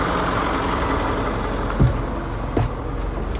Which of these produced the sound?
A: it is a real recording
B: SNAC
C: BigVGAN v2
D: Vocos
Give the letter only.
A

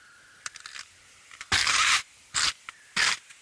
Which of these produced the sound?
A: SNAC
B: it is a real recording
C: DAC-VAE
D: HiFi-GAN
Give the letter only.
B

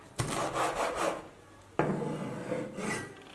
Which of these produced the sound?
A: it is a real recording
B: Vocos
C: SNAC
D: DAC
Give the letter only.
A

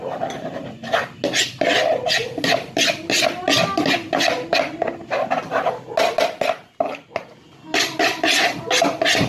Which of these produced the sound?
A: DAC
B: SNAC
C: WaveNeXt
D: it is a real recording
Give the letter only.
D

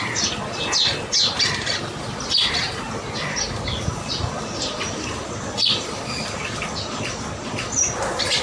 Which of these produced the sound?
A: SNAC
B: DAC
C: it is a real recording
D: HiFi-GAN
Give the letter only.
C